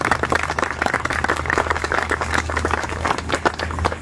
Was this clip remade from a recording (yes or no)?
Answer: yes